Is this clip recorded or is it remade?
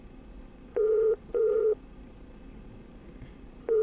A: remade